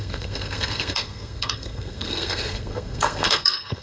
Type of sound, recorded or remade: remade